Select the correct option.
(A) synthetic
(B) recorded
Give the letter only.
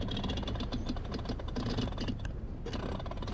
B